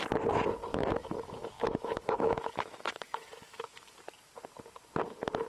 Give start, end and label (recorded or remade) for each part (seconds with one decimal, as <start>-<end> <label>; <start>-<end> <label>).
0.0-0.7 recorded; 0.7-4.0 remade; 4.0-5.5 recorded